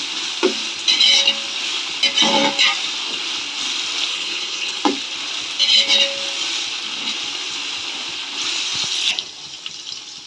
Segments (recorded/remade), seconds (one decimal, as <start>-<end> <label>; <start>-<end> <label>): 0.0-4.1 recorded; 4.1-4.8 remade; 4.8-10.3 recorded